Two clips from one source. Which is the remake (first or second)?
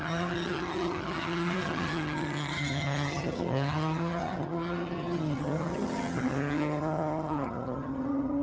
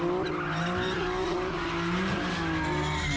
first